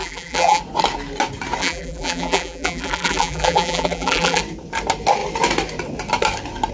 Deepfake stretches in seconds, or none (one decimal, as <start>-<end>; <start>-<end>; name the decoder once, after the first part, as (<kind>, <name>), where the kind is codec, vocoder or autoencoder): 0.0-0.6 (vocoder, BigVGAN v2); 1.6-4.4